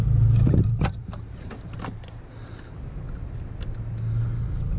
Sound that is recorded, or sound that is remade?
recorded